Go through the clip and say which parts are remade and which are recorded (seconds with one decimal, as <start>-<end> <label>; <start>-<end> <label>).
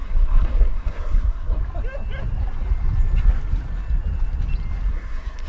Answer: 0.0-1.6 remade; 1.6-4.9 recorded; 4.9-5.5 remade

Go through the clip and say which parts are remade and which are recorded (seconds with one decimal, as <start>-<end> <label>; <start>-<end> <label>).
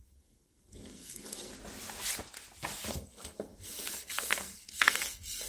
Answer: 0.0-1.5 remade; 1.5-2.9 recorded; 2.9-5.5 remade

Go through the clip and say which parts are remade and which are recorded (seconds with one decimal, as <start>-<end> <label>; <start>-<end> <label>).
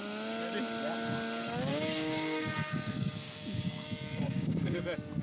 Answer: 0.0-1.7 recorded; 1.7-4.8 remade; 4.8-5.2 recorded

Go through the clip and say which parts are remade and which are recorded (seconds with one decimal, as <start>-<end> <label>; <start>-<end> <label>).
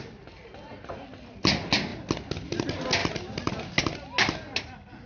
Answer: 0.0-5.1 recorded